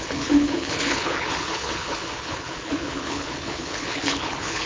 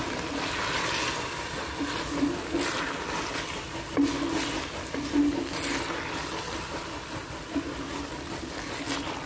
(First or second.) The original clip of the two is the second